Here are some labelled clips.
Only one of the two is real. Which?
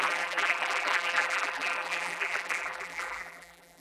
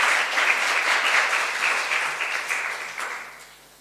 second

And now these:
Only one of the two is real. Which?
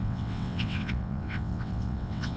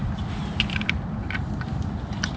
second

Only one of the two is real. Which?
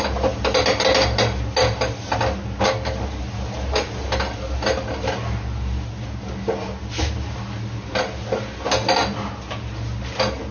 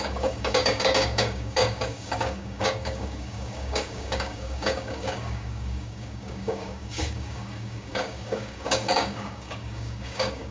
first